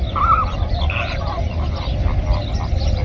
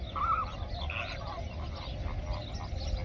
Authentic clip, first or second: second